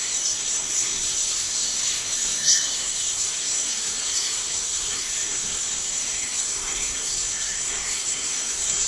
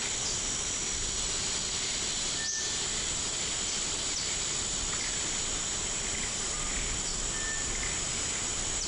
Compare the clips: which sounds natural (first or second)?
second